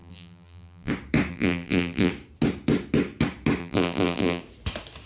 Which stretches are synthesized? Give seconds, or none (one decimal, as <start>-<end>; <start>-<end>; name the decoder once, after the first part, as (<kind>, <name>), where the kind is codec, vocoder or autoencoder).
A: 0.0-0.9 (vocoder, BigVGAN v2); 1.3-2.1; 3.6-4.4